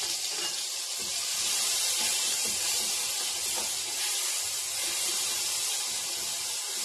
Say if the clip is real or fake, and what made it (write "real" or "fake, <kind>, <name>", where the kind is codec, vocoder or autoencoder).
real